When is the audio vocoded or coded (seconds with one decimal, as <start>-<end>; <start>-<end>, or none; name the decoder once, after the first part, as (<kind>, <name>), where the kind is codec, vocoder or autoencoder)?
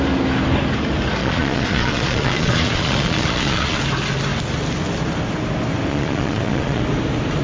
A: 1.2-3.8 (vocoder, Vocos); 5.9-6.8